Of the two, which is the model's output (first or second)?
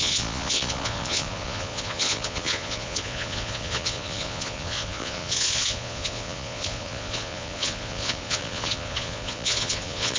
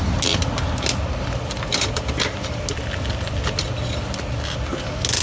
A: first